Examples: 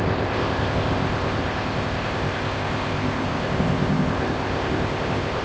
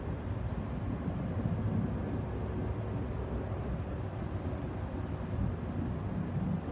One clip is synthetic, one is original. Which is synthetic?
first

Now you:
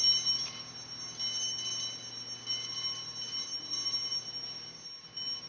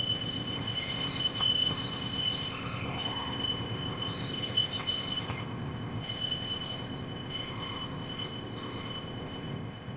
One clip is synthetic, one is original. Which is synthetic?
second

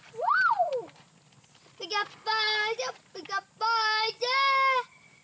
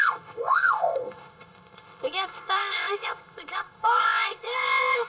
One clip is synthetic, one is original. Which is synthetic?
second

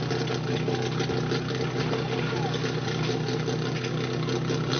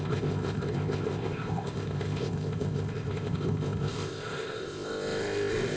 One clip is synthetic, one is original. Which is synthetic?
second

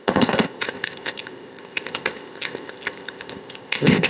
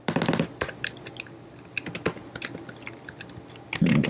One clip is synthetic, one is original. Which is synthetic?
first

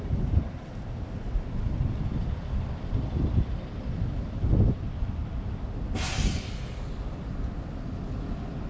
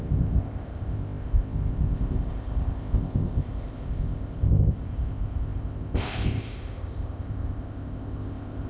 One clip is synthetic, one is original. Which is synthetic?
second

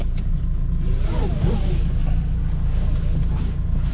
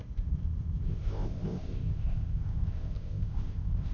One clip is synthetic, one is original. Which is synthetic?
second